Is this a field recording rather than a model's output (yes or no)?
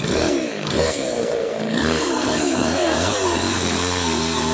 no